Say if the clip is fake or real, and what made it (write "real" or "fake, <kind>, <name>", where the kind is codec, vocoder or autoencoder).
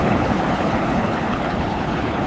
fake, codec, HILCodec